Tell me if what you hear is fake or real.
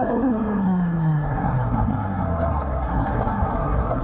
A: fake